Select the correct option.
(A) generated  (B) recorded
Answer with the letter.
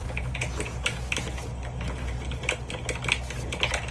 B